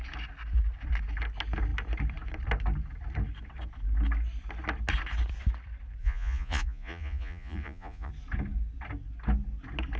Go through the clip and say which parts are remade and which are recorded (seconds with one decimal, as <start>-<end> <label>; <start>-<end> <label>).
0.0-6.0 recorded; 6.0-8.1 remade; 8.1-10.0 recorded

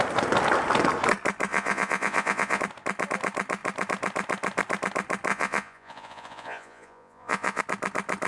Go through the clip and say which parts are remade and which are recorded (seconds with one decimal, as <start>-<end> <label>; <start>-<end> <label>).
0.0-1.5 recorded; 1.5-2.6 remade; 2.6-5.3 recorded; 5.3-7.6 remade; 7.6-8.3 recorded